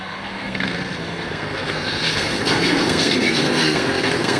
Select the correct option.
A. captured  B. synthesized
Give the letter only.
B